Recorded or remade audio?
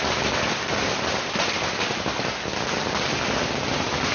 recorded